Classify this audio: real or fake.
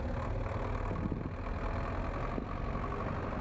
real